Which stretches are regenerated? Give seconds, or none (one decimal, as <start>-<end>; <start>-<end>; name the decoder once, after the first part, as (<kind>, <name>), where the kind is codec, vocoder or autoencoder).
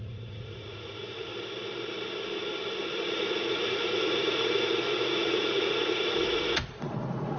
0.0-1.3 (vocoder, Vocos); 3.1-7.4